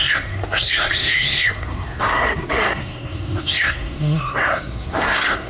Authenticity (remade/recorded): remade